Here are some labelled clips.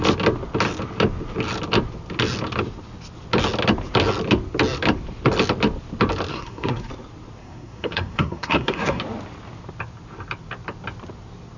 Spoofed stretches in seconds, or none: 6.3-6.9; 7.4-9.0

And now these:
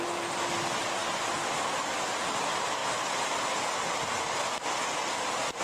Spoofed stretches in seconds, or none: none

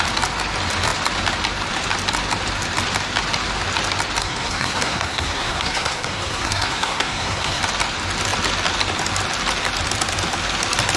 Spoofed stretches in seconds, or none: 4.2-7.6

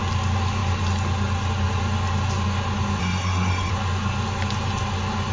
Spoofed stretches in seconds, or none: 3.0-3.7

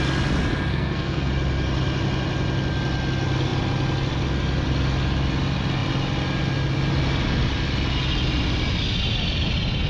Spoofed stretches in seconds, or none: 0.7-1.3

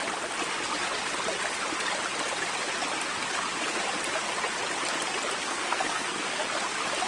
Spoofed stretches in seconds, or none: 5.4-6.4

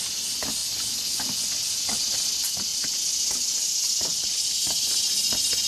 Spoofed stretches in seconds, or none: none

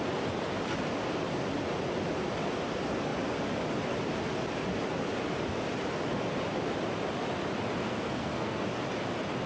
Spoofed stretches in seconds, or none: 7.8-8.7